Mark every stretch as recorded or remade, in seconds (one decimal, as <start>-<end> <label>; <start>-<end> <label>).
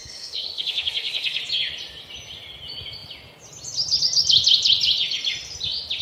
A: 0.0-1.4 remade; 1.4-6.0 recorded